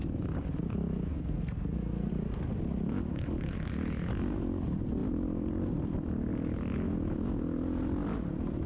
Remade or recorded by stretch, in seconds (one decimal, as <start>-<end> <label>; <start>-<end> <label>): 0.0-1.1 recorded; 1.1-2.1 remade; 2.1-8.7 recorded